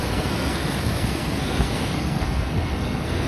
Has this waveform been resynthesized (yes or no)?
yes